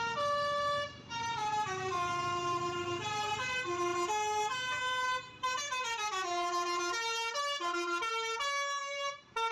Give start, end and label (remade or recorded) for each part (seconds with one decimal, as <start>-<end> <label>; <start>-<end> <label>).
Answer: 0.0-1.4 recorded; 1.4-3.3 remade; 3.3-8.8 recorded; 8.8-9.5 remade